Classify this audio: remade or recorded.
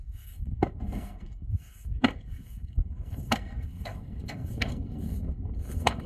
remade